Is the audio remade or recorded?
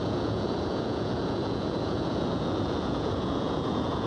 remade